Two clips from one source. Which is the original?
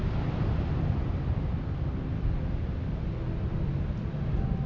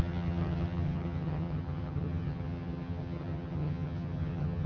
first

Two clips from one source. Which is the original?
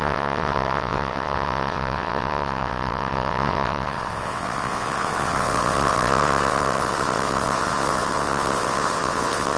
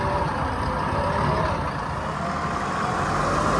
second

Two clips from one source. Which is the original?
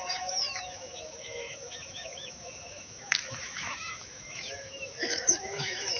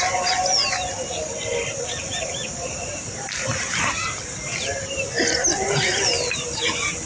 second